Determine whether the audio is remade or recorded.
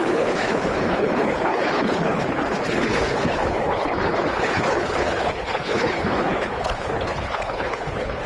remade